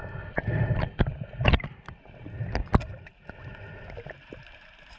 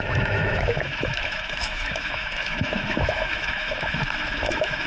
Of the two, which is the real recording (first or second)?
first